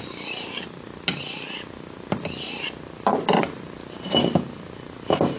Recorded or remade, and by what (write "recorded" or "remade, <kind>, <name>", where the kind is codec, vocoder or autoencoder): recorded